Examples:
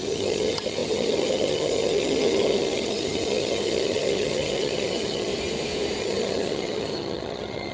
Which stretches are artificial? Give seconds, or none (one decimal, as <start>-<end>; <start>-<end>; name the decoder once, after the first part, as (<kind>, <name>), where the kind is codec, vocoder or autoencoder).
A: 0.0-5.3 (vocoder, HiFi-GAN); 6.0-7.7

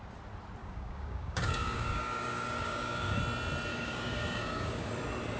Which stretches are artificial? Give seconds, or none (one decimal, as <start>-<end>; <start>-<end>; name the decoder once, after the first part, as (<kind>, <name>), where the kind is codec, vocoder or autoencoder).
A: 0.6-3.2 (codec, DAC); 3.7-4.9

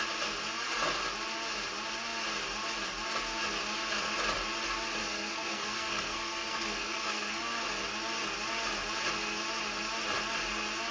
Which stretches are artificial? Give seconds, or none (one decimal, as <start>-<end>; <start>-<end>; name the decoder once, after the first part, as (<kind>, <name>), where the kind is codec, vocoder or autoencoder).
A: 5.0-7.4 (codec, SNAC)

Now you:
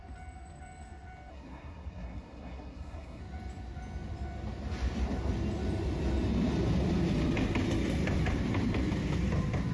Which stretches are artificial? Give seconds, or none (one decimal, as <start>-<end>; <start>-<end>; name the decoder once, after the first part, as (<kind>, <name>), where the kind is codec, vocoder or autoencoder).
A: 1.3-3.2 (codec, SNAC)